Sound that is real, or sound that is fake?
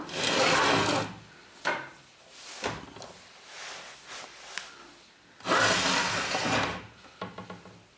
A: real